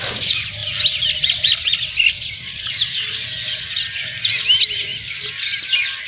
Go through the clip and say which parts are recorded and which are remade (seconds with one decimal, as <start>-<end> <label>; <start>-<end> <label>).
0.0-6.1 recorded